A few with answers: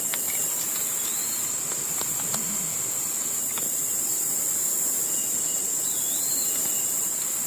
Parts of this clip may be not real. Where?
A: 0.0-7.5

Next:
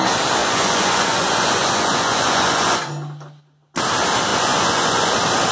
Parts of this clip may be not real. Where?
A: 0.4-2.9; 4.3-5.1

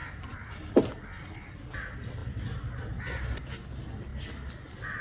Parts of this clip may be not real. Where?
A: 0.0-1.5

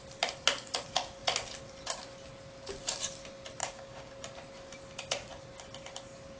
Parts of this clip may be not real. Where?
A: 3.6-4.1

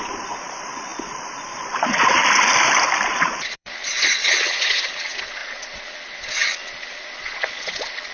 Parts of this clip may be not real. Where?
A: 0.0-2.2; 3.1-8.1